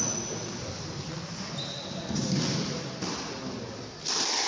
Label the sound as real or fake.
real